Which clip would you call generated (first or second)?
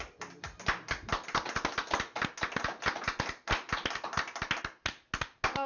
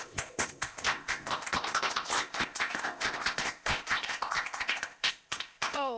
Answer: second